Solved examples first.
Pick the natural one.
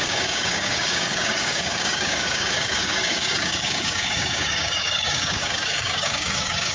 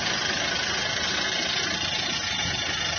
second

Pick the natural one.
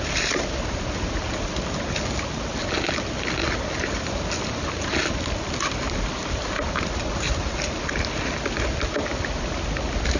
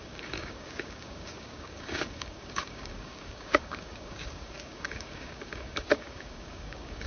first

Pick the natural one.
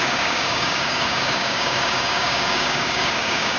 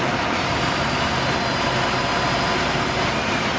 second